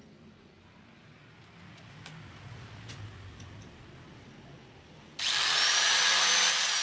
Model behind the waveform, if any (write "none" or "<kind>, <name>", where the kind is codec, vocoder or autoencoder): none